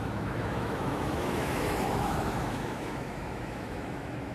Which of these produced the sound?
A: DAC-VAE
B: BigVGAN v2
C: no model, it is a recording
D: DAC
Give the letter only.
A